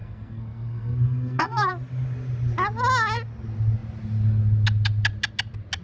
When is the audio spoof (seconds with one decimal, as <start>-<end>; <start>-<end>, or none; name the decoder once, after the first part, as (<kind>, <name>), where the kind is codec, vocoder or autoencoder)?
0.0-1.7 (codec, SNAC)